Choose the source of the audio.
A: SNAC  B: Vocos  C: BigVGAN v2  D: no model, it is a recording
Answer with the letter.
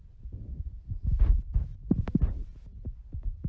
D